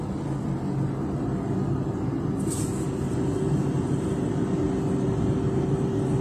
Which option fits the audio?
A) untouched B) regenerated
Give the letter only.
A